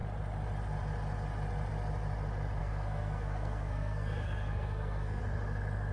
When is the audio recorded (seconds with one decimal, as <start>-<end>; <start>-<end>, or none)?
0.0-2.6; 5.2-5.9